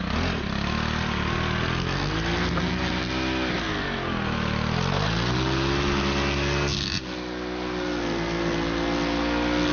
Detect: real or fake real